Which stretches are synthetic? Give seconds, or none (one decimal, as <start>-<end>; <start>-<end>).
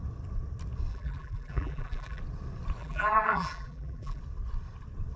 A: 0.9-2.2; 2.8-4.2